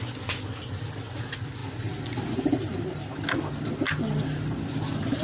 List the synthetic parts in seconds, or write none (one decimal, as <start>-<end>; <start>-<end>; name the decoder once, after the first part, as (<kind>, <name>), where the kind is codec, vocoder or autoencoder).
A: none

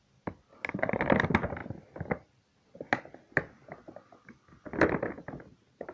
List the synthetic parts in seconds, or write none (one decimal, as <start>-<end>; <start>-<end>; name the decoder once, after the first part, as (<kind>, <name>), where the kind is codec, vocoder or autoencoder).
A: none